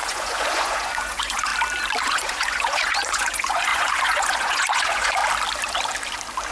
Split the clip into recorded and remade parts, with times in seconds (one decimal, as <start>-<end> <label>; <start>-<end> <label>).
0.0-1.5 remade; 1.5-2.0 recorded; 2.0-5.2 remade; 5.2-6.5 recorded